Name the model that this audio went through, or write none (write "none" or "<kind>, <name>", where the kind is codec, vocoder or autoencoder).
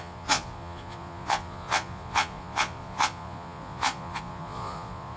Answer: vocoder, Vocos